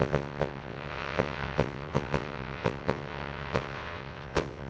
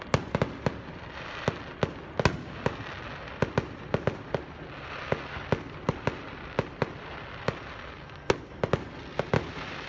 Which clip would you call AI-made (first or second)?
first